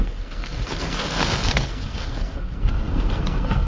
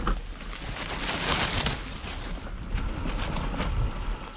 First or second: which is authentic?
second